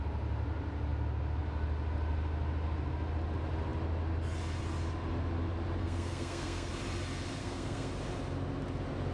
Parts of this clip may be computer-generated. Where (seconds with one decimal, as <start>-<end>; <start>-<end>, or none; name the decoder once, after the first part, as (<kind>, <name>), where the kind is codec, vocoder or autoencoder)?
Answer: 5.8-6.7 (codec, SNAC); 7.4-7.9